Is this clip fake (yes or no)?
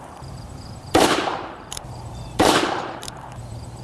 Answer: yes